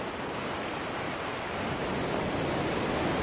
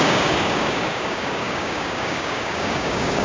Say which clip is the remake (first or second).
second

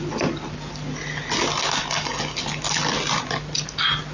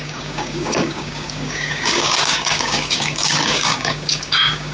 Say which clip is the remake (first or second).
second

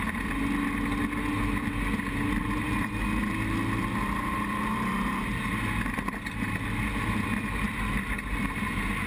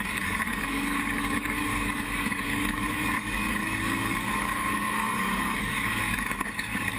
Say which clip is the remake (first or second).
second